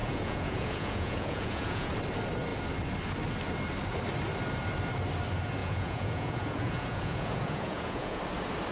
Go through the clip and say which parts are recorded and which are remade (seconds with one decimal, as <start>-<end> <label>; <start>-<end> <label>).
0.0-1.9 remade; 1.9-5.6 recorded; 5.6-8.2 remade; 8.2-8.7 recorded